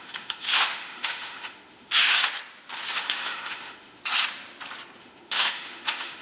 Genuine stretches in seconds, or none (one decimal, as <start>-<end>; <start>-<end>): 2.2-2.9; 4.0-5.0